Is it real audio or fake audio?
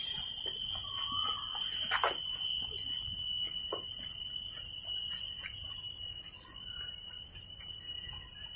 real